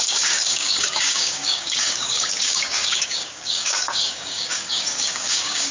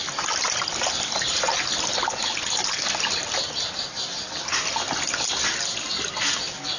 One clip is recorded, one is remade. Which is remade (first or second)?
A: first